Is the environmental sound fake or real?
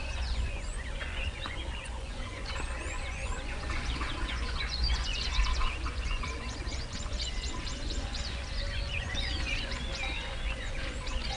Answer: fake